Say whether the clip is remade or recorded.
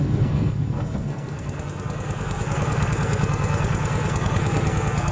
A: remade